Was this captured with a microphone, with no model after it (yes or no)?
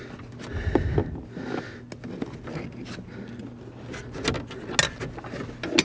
yes